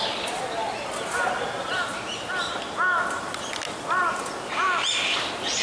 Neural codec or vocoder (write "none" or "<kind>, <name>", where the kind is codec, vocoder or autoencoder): none